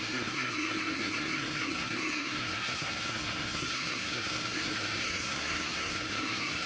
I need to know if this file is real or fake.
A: fake